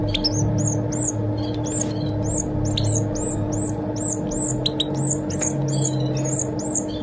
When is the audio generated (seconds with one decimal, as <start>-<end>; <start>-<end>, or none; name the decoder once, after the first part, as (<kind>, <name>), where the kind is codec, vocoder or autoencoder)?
none